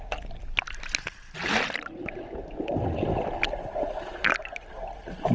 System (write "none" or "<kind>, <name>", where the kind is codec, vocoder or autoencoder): none